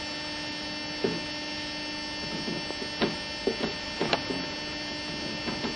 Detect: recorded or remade recorded